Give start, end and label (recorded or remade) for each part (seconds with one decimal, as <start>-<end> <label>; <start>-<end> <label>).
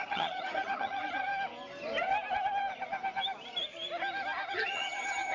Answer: 0.0-1.3 remade; 1.3-4.5 recorded; 4.5-5.3 remade